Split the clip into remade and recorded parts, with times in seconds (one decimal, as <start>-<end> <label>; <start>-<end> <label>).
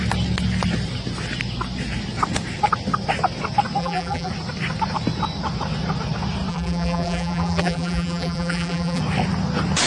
0.0-3.8 recorded; 3.8-4.3 remade; 4.3-6.5 recorded; 6.5-9.0 remade; 9.0-9.9 recorded